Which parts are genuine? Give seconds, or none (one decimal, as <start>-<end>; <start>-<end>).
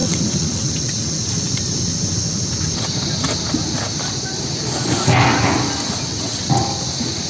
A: 1.3-6.1; 6.6-7.3